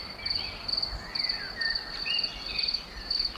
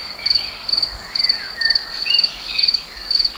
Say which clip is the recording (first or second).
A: first